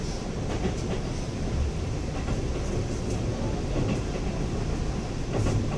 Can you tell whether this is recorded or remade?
recorded